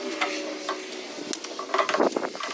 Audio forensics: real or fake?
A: real